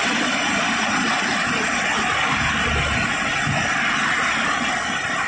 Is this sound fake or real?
real